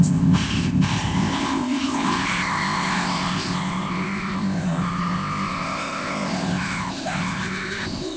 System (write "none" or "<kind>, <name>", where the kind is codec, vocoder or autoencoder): codec, ZipCodec